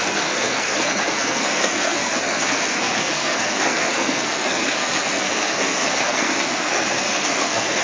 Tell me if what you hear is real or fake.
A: fake